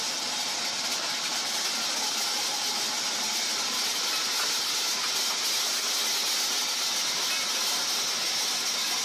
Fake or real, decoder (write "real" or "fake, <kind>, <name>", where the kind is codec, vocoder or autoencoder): real